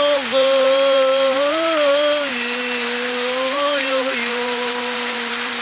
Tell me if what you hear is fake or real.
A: fake